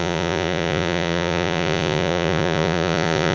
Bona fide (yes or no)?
no